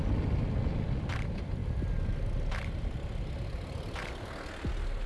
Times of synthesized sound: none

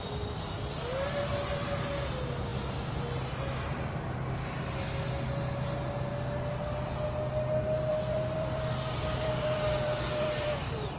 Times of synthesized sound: 7.9-11.0 (vocoder, BigVGAN v2)

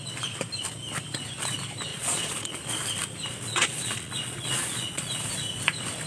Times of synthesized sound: 1.9-2.6 (vocoder, Vocos); 3.5-5.2

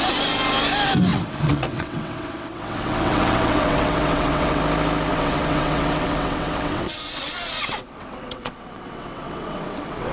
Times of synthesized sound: 1.1-4.6 (vocoder, WaveNeXt); 5.1-10.1

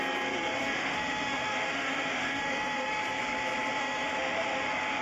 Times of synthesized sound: 0.6-3.0 (autoencoder, DAC-VAE); 3.8-5.0

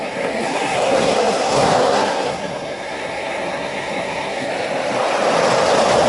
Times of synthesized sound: 0.0-4.5 (codec, SNAC)

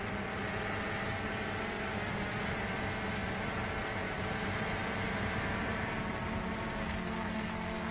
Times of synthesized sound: 6.8-7.9 (codec, SNAC)

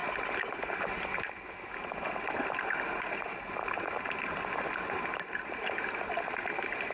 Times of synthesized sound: none